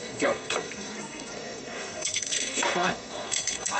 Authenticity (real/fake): fake